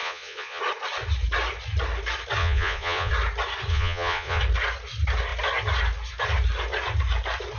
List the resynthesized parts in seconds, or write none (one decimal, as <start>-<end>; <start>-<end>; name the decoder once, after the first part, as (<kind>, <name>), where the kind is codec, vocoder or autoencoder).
0.0-0.6 (vocoder, Vocos); 2.4-3.1; 3.7-4.4